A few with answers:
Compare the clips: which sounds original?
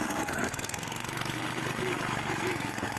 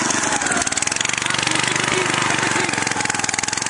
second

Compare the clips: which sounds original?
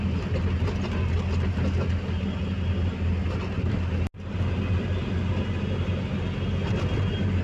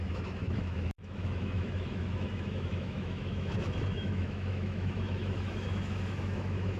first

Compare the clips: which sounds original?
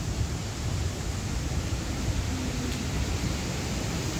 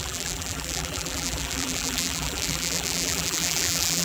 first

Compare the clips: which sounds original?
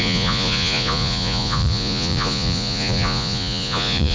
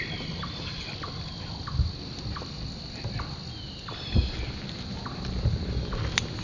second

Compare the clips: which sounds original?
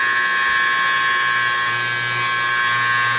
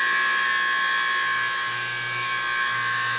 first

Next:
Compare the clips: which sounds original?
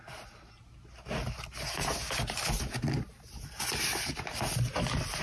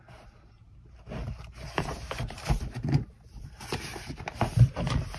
first